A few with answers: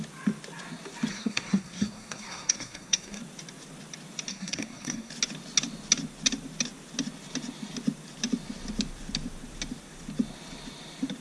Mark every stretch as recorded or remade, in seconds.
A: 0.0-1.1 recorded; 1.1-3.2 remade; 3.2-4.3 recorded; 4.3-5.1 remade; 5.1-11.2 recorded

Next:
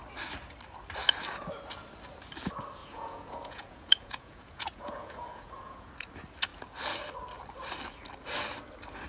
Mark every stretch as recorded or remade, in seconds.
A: 0.0-2.8 recorded; 2.8-5.9 remade; 5.9-9.1 recorded

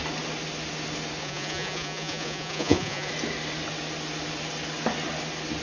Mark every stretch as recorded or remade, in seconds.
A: 0.0-1.2 recorded; 1.2-3.1 remade; 3.1-5.6 recorded

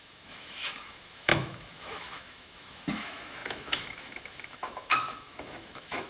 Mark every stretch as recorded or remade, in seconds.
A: 0.0-6.1 remade

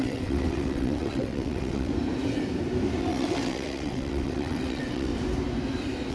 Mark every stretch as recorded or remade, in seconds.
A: 0.0-1.9 remade; 1.9-3.0 recorded; 3.0-5.1 remade; 5.1-6.1 recorded

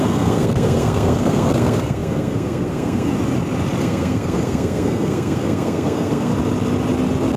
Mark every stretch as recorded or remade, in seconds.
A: 0.0-3.1 remade; 3.1-3.8 recorded; 3.8-6.3 remade; 6.3-7.4 recorded

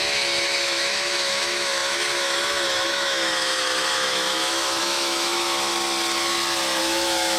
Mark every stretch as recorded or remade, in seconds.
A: 0.0-5.7 remade; 5.7-6.8 recorded; 6.8-7.4 remade

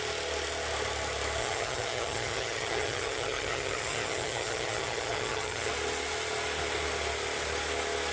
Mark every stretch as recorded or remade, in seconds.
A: 0.0-1.4 recorded; 1.4-5.7 remade; 5.7-8.1 recorded